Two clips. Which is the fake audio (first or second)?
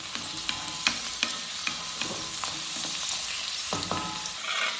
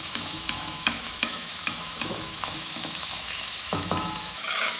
second